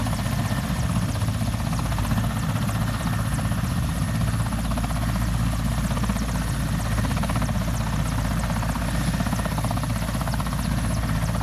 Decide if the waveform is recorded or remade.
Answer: recorded